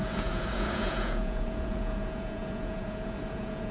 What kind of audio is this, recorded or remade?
remade